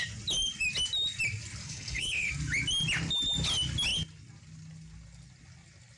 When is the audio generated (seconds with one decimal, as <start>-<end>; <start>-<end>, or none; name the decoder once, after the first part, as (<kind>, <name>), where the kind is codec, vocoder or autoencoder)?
1.6-2.3 (codec, HILCodec)